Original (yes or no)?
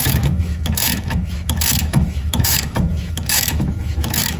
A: no